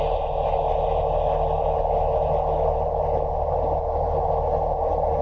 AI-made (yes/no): no